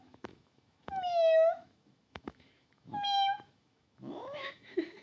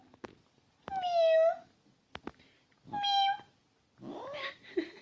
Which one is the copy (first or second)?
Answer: first